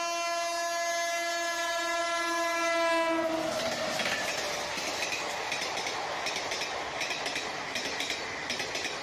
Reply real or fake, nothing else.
real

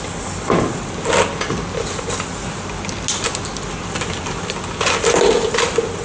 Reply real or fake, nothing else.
real